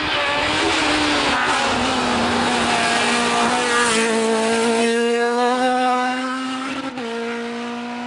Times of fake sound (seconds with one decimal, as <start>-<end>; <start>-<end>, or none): 4.8-6.7